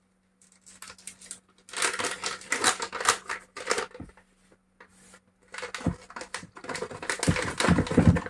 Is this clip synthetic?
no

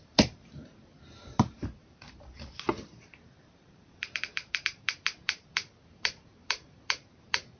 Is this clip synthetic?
yes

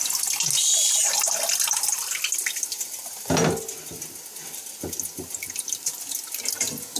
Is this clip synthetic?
no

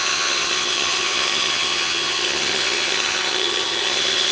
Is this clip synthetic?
yes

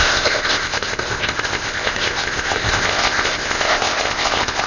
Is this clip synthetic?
yes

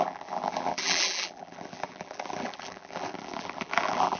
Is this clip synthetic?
yes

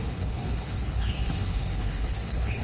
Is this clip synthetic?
yes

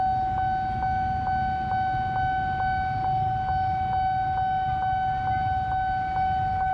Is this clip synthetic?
no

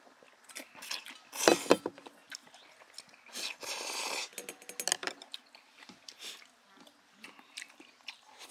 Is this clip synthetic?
no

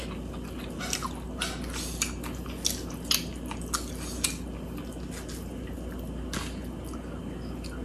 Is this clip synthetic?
no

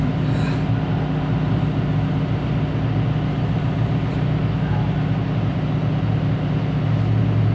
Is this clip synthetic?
no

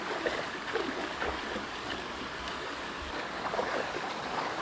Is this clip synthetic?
yes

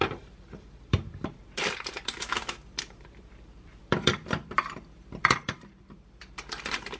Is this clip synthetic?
yes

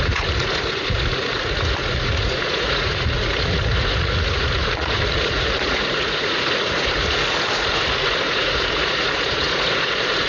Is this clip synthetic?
yes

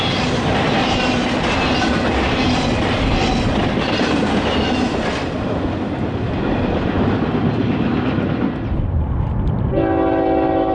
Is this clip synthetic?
no